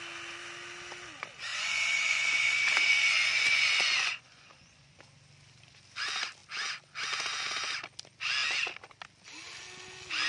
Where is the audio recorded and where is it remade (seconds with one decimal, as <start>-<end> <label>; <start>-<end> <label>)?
0.0-1.5 recorded; 1.5-5.0 remade; 5.0-10.3 recorded